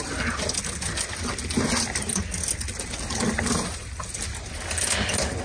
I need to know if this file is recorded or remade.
recorded